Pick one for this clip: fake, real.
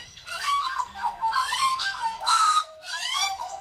fake